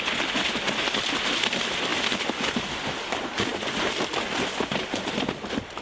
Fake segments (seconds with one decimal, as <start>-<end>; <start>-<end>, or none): none